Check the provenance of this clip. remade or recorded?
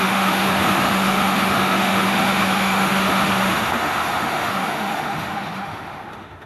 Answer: remade